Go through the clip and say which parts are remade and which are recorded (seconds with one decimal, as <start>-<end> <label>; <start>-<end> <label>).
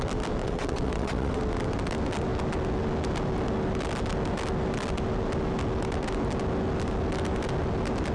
0.0-0.4 recorded; 0.4-1.4 remade; 1.4-8.1 recorded